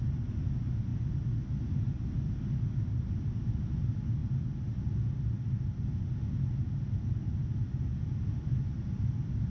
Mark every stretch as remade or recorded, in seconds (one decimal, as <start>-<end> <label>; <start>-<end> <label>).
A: 0.0-9.5 recorded